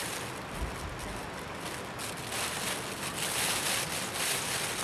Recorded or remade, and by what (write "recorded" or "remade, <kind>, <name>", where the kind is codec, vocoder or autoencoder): recorded